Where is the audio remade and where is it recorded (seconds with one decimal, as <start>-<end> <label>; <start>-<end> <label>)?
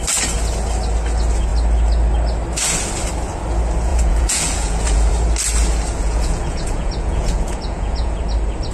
0.0-3.9 recorded; 3.9-5.1 remade; 5.1-6.0 recorded; 6.0-8.2 remade; 8.2-8.7 recorded